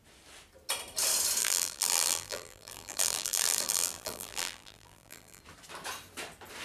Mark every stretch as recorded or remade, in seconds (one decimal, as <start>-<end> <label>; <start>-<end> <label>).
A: 0.0-1.4 recorded; 1.4-5.4 remade; 5.4-6.6 recorded